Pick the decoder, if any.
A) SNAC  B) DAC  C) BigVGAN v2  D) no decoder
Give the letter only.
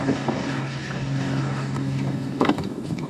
B